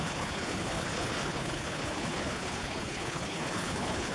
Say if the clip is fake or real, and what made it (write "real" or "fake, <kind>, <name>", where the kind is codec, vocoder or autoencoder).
fake, codec, HILCodec